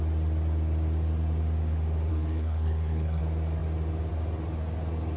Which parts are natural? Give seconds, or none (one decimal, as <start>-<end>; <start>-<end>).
0.0-2.1; 3.2-5.2